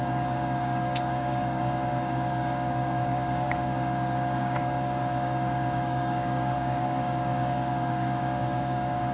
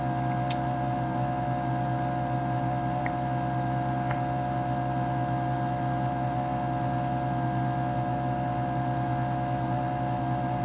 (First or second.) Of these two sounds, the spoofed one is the first